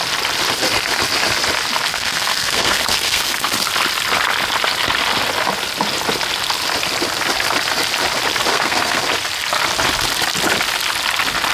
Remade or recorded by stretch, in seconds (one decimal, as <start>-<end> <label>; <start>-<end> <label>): 0.0-1.9 recorded; 1.9-3.5 remade; 3.5-8.5 recorded; 8.5-9.0 remade; 9.0-11.5 recorded